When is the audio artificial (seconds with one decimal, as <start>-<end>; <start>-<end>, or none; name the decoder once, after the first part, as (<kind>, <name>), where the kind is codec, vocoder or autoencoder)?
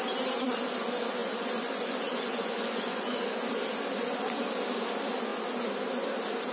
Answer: 1.2-3.4 (vocoder, Vocos)